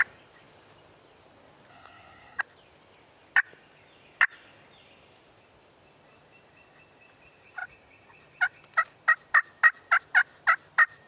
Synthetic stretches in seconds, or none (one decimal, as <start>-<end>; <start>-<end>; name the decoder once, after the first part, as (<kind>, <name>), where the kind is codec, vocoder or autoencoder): 1.7-2.4 (codec, SNAC)